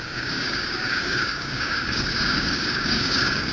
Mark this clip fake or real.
fake